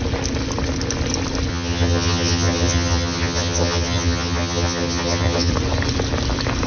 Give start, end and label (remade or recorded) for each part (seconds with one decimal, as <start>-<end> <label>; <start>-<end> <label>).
0.0-1.5 recorded; 1.5-5.5 remade; 5.5-6.7 recorded